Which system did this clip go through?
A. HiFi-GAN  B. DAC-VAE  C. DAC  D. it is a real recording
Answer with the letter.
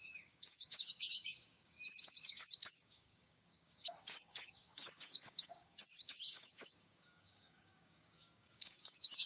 C